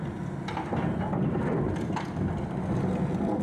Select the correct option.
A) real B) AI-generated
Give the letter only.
A